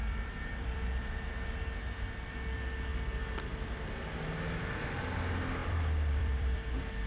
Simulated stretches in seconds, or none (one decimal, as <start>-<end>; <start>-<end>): 0.0-1.3; 5.6-7.1